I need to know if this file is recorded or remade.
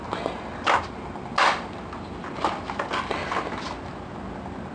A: recorded